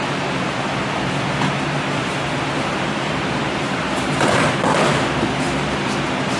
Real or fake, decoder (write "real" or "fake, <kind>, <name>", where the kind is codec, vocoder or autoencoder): fake, vocoder, BigVGAN v2